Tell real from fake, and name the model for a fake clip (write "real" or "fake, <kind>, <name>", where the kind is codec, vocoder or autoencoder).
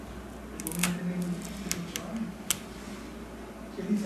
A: real